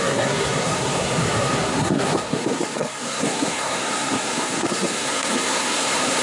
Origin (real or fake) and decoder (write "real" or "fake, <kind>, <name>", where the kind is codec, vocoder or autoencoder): fake, codec, SNAC